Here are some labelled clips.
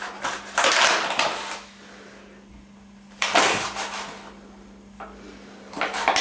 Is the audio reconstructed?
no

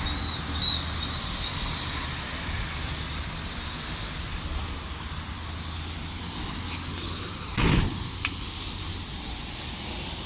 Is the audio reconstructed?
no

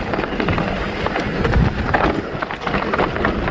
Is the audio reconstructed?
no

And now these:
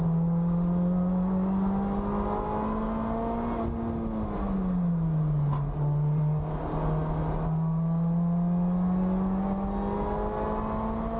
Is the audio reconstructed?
no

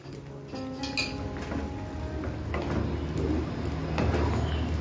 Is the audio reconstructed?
no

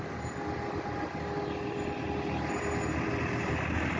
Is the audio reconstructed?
no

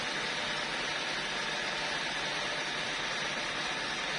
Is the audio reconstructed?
no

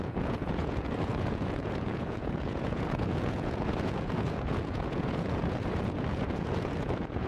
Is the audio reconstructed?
yes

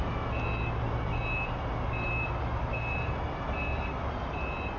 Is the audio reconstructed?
no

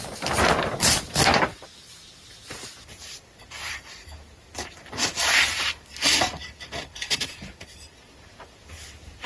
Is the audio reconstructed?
no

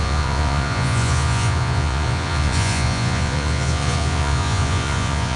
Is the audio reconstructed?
yes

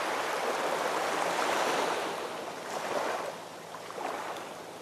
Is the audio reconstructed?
no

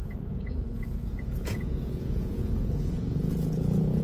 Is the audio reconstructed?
yes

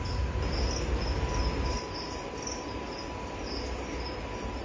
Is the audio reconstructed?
no